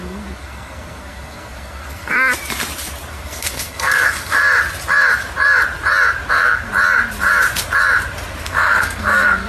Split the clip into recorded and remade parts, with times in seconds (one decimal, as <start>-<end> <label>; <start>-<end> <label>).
0.0-2.3 remade; 2.3-3.1 recorded; 3.1-4.4 remade; 4.4-6.3 recorded; 6.3-6.7 remade; 6.7-8.4 recorded; 8.4-9.5 remade

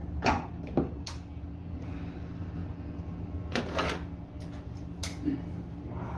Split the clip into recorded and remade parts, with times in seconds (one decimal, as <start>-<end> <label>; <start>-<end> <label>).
0.0-6.2 recorded